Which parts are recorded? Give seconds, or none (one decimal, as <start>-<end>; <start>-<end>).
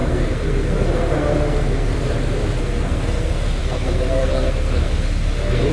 1.9-2.6